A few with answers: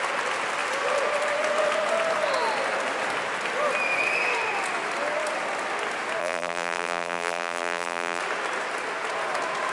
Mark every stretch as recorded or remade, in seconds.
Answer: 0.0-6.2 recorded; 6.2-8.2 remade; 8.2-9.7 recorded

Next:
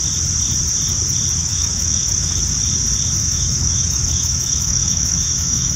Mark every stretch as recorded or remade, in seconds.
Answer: 0.0-1.4 recorded; 1.4-2.4 remade; 2.4-3.2 recorded; 3.2-5.8 remade

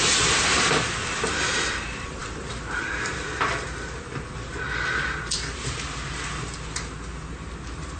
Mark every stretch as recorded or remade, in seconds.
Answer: 0.0-2.2 recorded; 2.2-4.5 remade; 4.5-8.0 recorded